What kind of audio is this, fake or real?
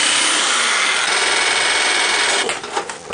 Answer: real